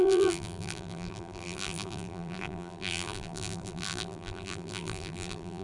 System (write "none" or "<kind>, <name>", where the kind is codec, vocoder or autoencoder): vocoder, BigVGAN v2